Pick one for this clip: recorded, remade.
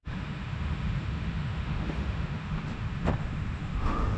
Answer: remade